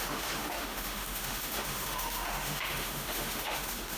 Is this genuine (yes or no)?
no